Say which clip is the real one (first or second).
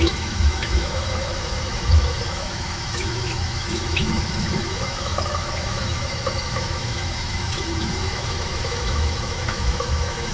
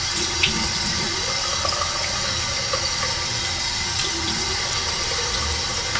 second